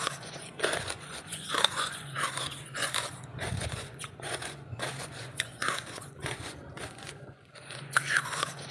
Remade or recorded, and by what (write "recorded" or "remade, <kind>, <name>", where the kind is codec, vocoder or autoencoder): remade, vocoder, Vocos